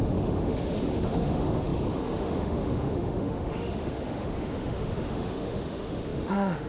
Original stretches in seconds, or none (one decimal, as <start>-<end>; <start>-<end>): none